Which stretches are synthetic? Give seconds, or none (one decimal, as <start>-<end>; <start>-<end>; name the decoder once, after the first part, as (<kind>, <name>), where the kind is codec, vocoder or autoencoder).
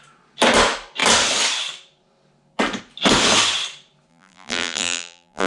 4.1-5.5 (vocoder, BigVGAN v2)